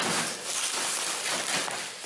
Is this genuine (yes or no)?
yes